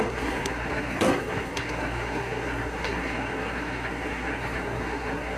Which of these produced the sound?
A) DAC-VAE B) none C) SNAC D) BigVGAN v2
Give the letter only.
C